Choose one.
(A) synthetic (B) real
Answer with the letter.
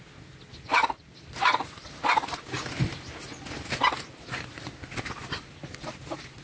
B